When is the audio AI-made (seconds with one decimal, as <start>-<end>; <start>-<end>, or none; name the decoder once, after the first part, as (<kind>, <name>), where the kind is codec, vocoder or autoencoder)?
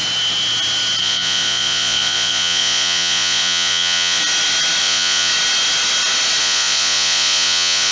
1.0-4.2 (vocoder, Vocos); 4.8-5.3; 6.4-7.9